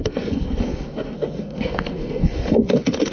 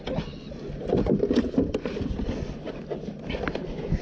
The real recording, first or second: second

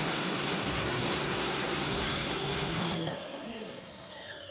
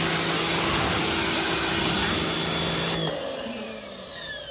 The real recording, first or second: second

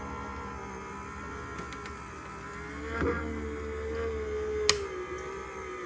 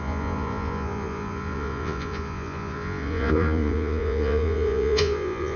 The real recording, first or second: first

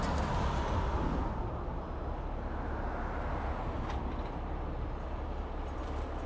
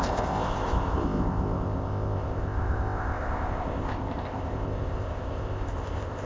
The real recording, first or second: first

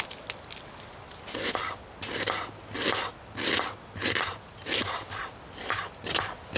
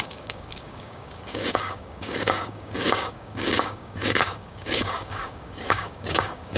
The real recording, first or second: first